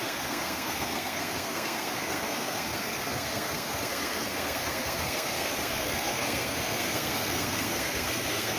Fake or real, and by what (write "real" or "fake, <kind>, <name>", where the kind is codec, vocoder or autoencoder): fake, codec, SNAC